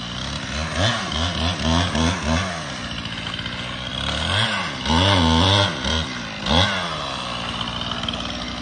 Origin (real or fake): real